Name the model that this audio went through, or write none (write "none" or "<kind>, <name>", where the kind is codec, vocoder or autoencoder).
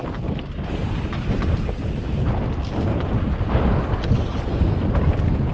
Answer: none